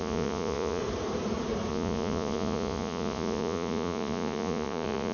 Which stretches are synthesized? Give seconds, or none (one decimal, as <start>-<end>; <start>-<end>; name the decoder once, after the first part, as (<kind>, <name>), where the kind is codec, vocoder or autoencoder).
0.0-0.8 (vocoder, Vocos); 1.7-5.1